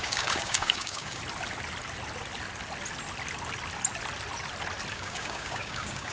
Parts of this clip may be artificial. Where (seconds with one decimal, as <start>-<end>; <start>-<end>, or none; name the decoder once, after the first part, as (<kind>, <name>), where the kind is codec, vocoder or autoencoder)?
0.0-1.2 (codec, DAC); 4.9-6.1